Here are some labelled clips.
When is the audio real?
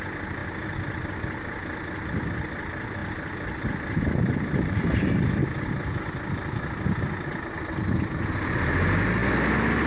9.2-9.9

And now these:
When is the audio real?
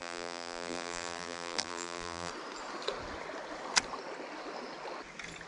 2.3-5.5